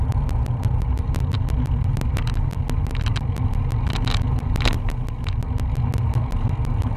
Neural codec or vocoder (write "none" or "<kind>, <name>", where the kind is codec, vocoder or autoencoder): none